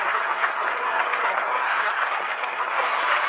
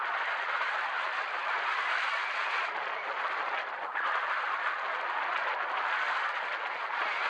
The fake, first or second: first